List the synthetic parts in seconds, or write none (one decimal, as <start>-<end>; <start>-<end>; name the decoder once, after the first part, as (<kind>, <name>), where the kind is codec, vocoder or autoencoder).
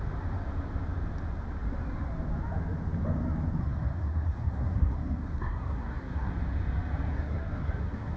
3.6-6.3 (codec, SNAC); 7.1-8.2